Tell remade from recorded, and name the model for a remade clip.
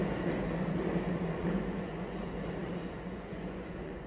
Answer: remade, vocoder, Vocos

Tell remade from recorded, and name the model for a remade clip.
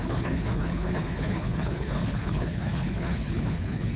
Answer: remade, codec, HILCodec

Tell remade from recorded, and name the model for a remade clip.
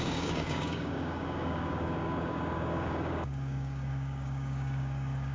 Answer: remade, codec, DAC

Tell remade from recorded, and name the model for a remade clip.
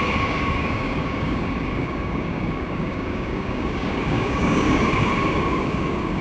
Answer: remade, codec, DAC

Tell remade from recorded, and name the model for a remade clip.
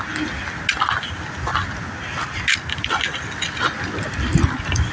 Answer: recorded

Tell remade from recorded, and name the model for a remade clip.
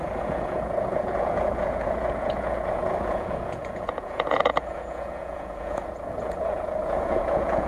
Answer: remade, vocoder, Vocos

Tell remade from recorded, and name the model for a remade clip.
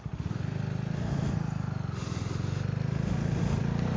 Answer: recorded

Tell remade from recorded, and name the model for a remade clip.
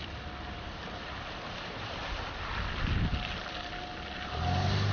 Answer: recorded